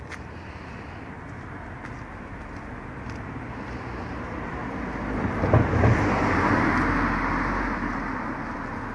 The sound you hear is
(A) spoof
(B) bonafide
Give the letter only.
B